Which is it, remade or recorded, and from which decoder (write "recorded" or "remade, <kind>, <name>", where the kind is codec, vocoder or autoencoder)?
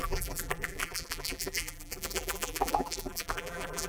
remade, vocoder, BigVGAN v2